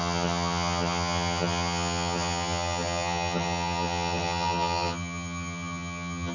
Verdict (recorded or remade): remade